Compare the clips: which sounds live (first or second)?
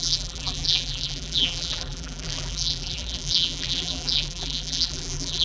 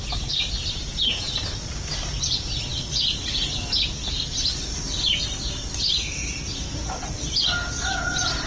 second